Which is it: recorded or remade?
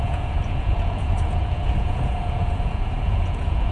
remade